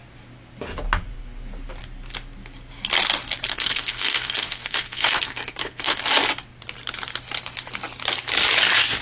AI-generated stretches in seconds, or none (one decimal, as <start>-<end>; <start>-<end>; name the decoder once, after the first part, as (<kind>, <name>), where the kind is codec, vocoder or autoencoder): 3.5-6.0 (codec, SNAC)